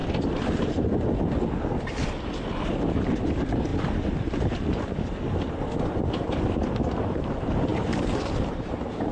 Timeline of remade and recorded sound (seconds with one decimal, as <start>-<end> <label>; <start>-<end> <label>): 0.0-2.7 recorded; 2.7-3.7 remade; 3.7-7.0 recorded; 7.0-9.1 remade